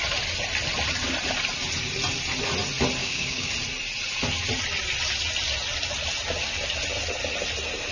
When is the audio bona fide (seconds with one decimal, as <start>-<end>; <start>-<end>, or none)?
0.0-3.0; 3.5-7.9